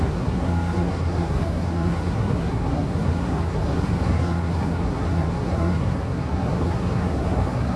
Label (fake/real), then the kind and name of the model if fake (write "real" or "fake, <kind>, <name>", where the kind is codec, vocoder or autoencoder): fake, codec, SNAC